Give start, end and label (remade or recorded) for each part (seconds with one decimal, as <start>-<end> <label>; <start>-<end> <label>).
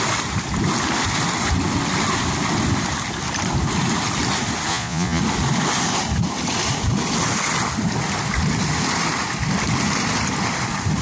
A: 0.0-4.7 recorded; 4.7-5.2 remade; 5.2-11.0 recorded